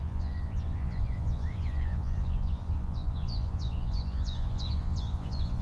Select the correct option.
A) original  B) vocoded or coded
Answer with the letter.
B